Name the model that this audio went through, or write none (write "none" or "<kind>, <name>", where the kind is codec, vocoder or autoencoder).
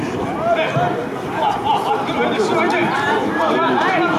none